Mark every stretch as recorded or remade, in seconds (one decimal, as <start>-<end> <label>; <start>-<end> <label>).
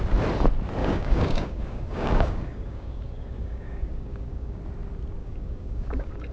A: 0.0-0.8 recorded; 0.8-4.6 remade; 4.6-5.2 recorded; 5.2-6.3 remade